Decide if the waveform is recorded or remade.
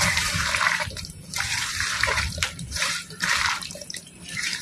remade